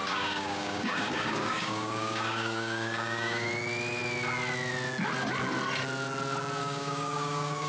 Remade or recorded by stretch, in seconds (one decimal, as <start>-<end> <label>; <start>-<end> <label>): 0.0-3.5 remade; 3.5-6.6 recorded; 6.6-7.7 remade